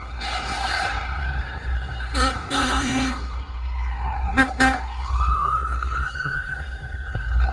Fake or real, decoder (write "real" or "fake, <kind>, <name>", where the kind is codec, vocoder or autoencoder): fake, codec, SNAC